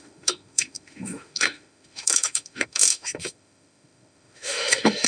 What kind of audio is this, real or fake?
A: fake